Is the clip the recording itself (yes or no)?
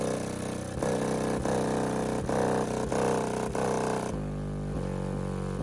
yes